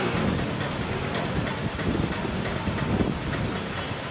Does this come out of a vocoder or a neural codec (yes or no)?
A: yes